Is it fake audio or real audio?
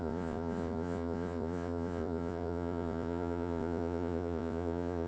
fake